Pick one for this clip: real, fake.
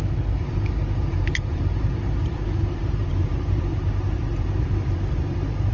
fake